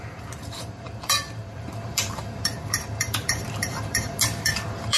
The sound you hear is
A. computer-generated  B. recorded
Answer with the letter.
A